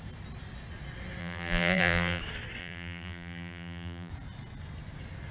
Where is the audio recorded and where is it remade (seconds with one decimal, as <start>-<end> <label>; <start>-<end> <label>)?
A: 0.0-1.2 recorded; 1.2-2.2 remade; 2.2-2.6 recorded; 2.6-4.1 remade; 4.1-5.3 recorded